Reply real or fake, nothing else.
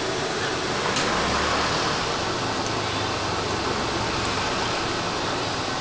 real